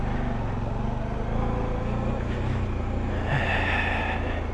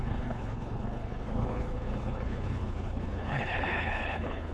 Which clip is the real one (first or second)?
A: first